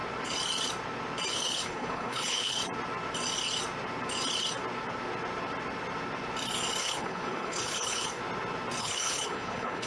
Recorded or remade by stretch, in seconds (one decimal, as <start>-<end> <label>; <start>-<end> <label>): 0.0-1.3 recorded; 1.3-2.6 remade; 2.6-6.8 recorded; 6.8-8.2 remade; 8.2-8.8 recorded; 8.8-9.9 remade